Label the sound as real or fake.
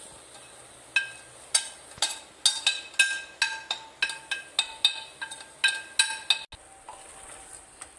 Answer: real